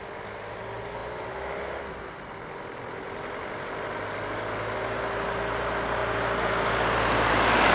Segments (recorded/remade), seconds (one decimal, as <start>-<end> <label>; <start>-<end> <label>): 0.0-7.7 recorded